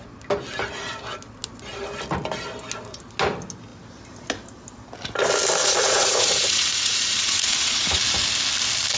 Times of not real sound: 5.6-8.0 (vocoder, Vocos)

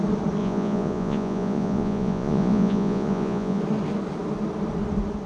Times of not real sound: 0.4-3.6 (vocoder, Vocos)

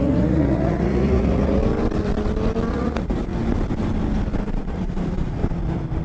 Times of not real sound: 0.0-1.6 (vocoder, Vocos); 2.7-3.3; 4.5-5.4

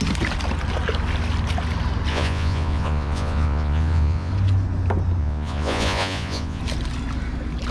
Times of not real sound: 2.1-4.3 (vocoder, Vocos); 5.2-6.6

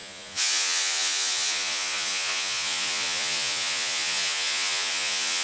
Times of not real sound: 0.0-5.4 (vocoder, Vocos)

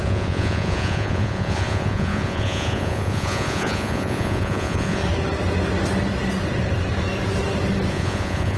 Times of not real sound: 0.0-5.0 (vocoder, Vocos); 7.9-8.6

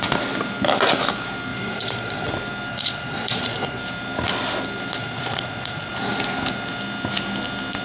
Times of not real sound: 1.5-2.3 (vocoder, Vocos); 2.7-3.8; 5.0-5.9

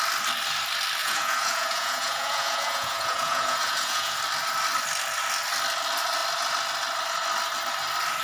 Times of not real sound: 1.0-4.2 (vocoder, Vocos)